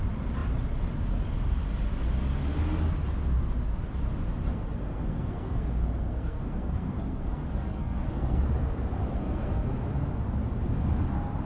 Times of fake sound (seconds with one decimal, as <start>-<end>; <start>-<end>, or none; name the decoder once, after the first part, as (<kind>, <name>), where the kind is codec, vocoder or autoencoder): 4.5-8.4 (codec, SNAC); 9.1-9.7